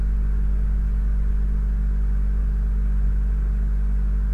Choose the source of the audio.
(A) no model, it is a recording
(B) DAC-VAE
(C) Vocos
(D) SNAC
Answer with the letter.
A